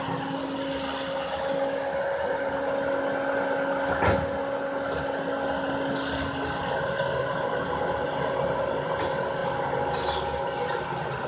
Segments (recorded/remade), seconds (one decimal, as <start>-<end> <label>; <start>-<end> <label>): 0.0-11.3 recorded